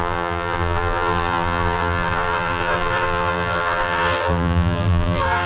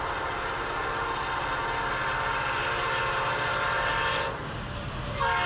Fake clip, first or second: first